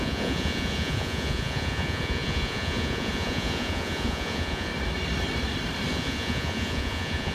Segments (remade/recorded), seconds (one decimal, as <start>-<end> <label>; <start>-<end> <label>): 0.0-4.7 remade; 4.7-5.9 recorded; 5.9-7.3 remade